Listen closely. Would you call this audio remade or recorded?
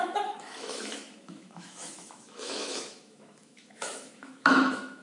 remade